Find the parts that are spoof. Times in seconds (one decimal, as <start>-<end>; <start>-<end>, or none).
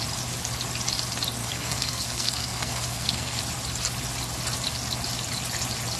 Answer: 1.4-3.4